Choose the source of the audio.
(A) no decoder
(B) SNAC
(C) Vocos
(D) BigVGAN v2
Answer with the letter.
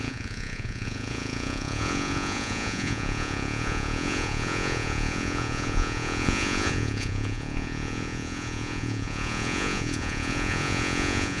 C